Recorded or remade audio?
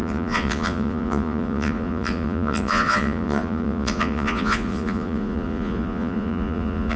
remade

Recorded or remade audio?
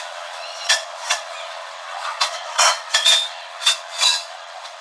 remade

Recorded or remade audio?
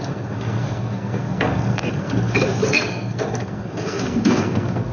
remade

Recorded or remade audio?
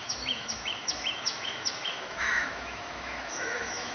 remade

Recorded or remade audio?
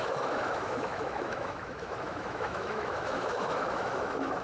remade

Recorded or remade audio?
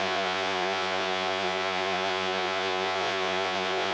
remade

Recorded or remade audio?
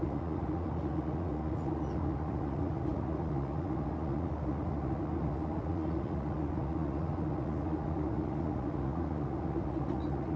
remade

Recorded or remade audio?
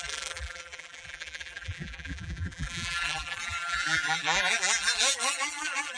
remade